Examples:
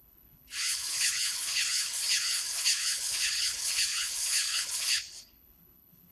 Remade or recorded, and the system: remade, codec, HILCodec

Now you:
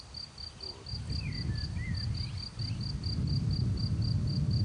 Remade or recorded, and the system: recorded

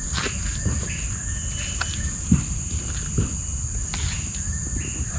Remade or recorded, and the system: recorded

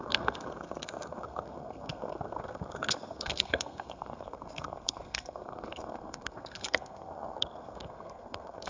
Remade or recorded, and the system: remade, codec, SNAC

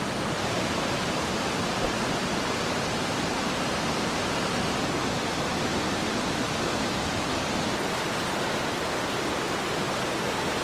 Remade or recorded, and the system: recorded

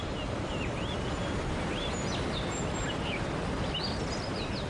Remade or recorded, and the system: recorded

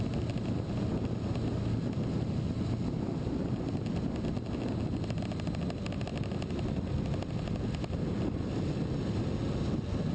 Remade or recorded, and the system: recorded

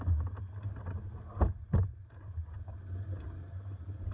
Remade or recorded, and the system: recorded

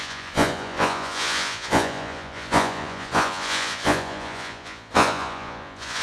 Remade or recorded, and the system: remade, vocoder, Vocos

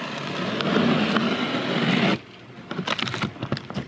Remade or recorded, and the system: recorded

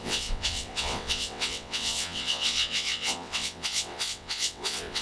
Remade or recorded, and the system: remade, vocoder, WaveNeXt